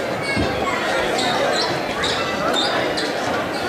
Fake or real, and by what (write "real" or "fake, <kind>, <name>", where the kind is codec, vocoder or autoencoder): real